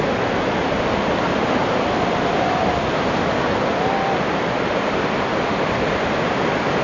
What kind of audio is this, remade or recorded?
recorded